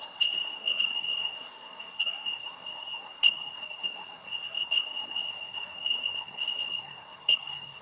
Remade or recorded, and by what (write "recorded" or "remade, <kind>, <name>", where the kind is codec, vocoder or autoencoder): remade, codec, SNAC